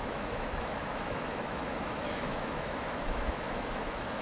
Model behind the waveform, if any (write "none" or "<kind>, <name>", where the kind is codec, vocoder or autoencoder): autoencoder, DAC-VAE